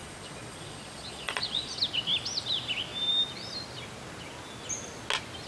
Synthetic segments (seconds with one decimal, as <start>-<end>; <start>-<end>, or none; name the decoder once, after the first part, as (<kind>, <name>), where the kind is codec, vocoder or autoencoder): 0.0-1.8 (vocoder, Vocos)

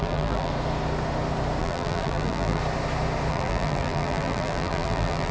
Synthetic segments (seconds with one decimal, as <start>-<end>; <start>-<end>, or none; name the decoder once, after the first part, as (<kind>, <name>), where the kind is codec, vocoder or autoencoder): 0.0-0.5 (vocoder, BigVGAN v2); 1.6-2.6; 3.3-5.3